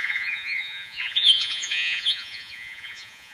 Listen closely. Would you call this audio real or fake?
fake